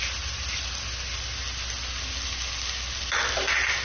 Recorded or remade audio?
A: recorded